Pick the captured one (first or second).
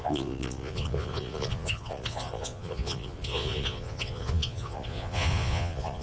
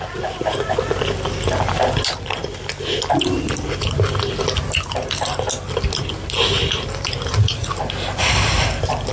second